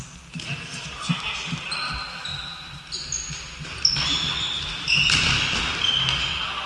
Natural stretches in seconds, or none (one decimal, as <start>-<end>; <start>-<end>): 0.0-6.7

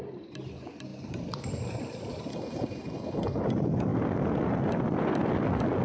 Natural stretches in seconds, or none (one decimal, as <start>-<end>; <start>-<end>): 0.0-2.3; 3.4-5.8

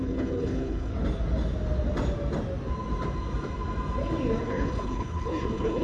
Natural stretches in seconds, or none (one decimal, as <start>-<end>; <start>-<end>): 0.9-4.4

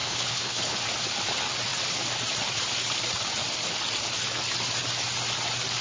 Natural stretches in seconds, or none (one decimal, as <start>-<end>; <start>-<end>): 0.8-5.8